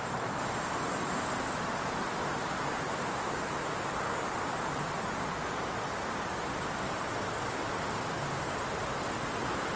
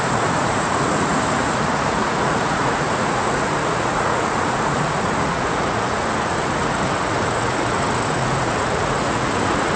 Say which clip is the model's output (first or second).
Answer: second